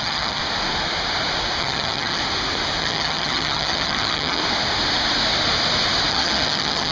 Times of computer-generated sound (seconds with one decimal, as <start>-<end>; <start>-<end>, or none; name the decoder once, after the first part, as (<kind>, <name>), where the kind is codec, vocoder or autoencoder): 0.0-0.4 (vocoder, HiFi-GAN); 1.6-2.2; 2.8-4.4; 6.1-6.9